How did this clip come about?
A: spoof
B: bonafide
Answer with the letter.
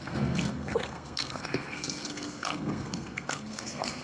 A